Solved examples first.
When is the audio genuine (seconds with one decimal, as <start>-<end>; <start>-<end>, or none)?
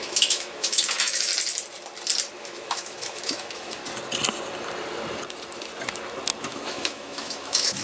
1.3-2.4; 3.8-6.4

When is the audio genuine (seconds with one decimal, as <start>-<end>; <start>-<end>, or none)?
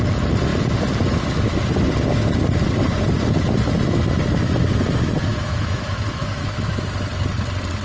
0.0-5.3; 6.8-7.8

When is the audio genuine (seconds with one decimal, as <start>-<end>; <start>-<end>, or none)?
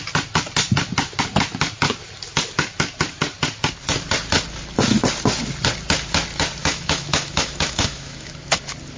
0.0-6.6; 8.3-9.0